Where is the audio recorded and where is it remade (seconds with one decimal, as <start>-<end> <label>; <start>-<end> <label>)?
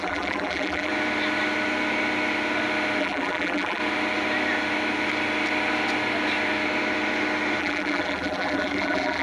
0.0-0.9 remade; 0.9-3.0 recorded; 3.0-3.8 remade; 3.8-7.6 recorded; 7.6-9.2 remade